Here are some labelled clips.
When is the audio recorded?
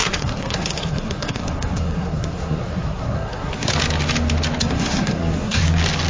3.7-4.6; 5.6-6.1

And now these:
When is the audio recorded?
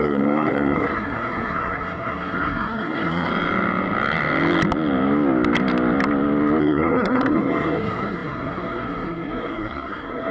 3.3-6.6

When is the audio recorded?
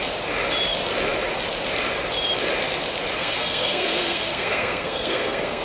0.0-3.2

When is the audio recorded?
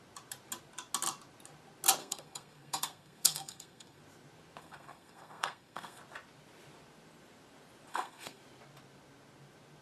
0.0-2.0; 4.0-4.6; 6.0-7.9; 8.4-9.8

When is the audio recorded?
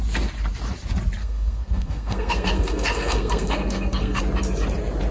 0.0-1.2; 4.2-5.1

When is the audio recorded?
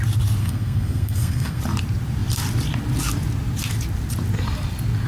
0.0-0.4; 1.6-5.1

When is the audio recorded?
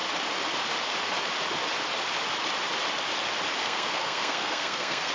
0.0-3.6